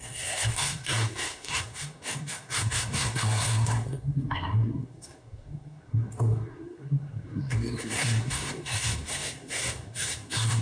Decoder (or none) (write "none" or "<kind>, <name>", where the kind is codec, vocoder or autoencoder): codec, SNAC